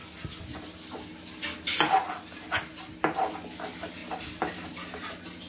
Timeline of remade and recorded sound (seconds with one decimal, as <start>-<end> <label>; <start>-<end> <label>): 0.0-5.5 recorded